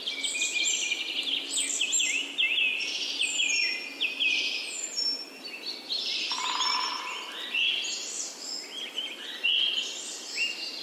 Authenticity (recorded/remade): recorded